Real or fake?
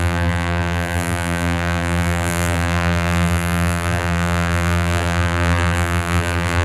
fake